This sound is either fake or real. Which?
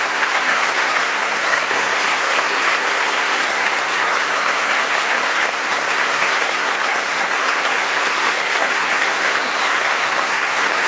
fake